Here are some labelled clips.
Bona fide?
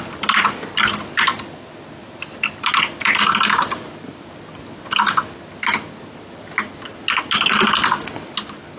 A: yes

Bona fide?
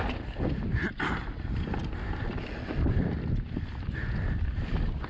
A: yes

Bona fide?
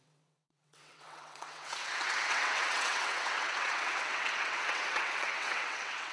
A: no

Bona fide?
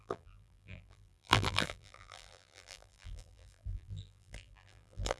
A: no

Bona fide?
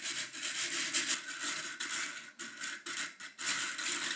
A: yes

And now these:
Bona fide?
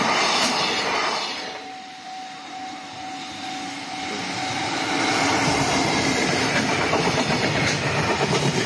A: yes